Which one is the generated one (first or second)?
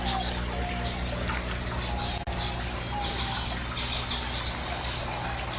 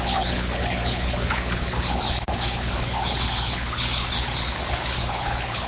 second